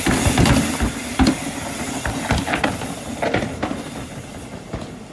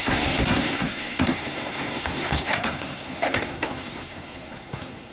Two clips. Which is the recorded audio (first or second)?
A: first